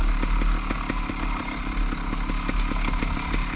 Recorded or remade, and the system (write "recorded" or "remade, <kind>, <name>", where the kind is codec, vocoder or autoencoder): recorded